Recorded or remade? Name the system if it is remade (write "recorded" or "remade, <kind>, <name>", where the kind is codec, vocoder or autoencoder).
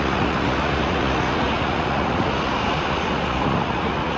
remade, vocoder, Vocos